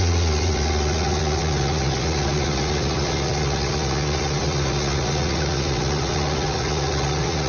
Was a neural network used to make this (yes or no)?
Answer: yes